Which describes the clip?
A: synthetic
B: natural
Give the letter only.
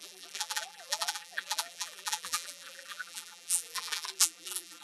A